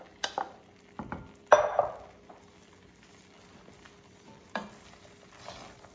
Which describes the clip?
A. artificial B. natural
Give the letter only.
B